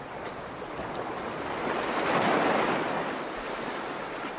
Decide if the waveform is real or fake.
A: real